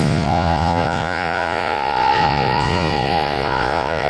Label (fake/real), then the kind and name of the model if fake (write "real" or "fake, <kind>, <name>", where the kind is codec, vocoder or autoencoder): fake, vocoder, Vocos